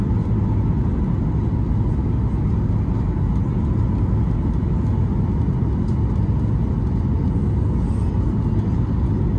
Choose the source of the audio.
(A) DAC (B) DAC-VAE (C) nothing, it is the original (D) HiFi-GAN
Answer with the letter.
C